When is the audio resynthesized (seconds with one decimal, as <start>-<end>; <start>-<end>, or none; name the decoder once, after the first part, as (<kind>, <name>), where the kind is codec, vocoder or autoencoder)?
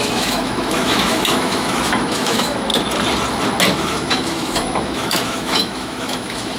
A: 0.0-2.7 (autoencoder, DAC-VAE); 3.7-6.6